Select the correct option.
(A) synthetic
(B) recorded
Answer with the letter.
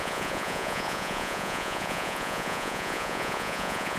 A